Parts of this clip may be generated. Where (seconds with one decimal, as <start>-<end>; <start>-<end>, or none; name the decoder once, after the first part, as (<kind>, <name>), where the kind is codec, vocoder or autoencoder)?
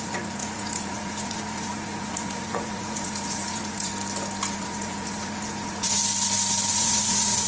0.0-3.9 (vocoder, Vocos); 4.5-6.0; 6.7-7.5